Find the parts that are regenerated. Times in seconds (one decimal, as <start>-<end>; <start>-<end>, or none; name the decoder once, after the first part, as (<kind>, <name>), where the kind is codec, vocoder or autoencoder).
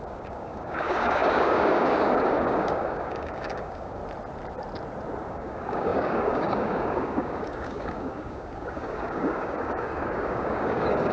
0.0-4.0 (codec, DAC); 5.3-11.1